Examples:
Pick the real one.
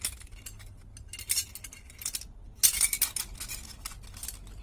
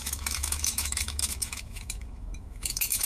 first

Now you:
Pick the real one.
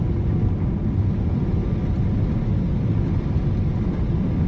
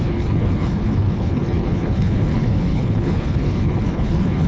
first